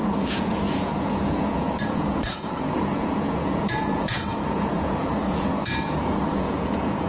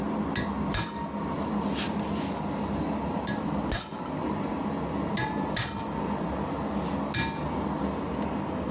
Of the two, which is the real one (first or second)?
second